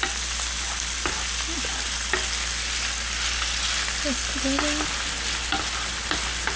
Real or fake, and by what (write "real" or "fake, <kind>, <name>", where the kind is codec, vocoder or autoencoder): real